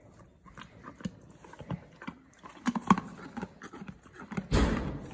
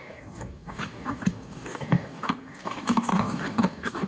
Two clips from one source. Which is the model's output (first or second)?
second